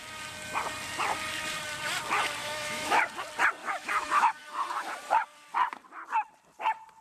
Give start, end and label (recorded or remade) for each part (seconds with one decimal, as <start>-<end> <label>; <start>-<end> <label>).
0.0-2.4 recorded; 2.4-3.0 remade; 3.0-3.6 recorded; 3.6-4.3 remade; 4.3-7.0 recorded